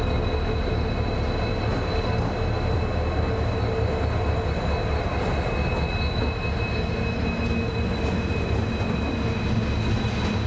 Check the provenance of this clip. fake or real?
real